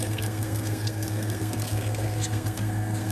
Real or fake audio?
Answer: fake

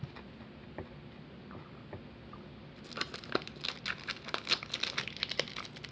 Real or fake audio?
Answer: real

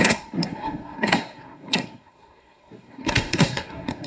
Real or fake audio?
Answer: fake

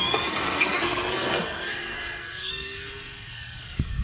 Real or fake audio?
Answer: fake